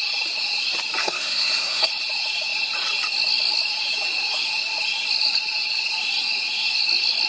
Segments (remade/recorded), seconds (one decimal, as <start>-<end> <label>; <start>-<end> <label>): 0.0-1.0 recorded; 1.0-1.9 remade; 1.9-7.3 recorded